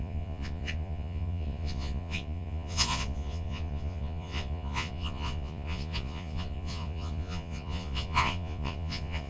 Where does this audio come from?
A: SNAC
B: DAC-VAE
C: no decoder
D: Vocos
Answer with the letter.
D